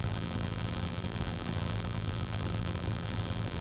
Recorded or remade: remade